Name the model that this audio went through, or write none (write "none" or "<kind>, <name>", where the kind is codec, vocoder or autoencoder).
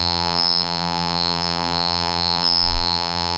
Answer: vocoder, BigVGAN v2